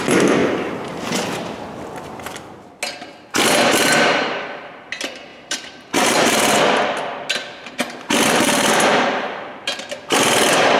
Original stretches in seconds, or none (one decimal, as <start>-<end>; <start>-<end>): 0.0-5.3; 6.6-7.4; 9.8-10.8